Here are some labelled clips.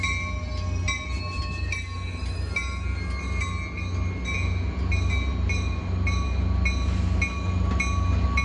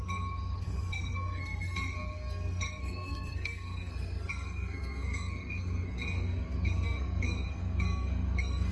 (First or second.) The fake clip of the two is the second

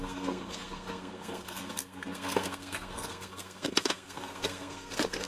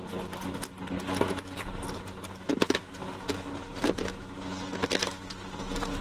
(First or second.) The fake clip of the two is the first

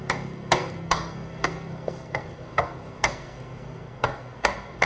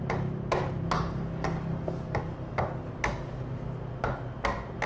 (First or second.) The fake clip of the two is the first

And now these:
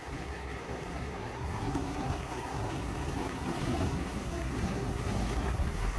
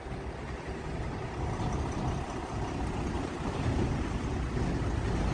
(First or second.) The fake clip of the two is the first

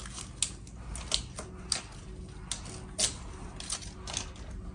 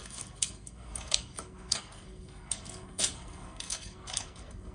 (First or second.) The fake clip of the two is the second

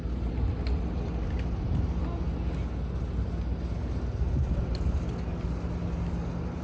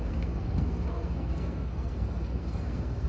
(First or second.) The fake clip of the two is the second